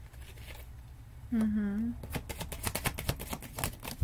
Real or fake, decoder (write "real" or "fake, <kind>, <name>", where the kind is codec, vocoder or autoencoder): real